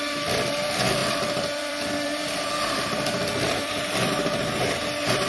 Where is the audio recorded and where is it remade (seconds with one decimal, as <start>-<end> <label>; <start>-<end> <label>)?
0.0-5.3 remade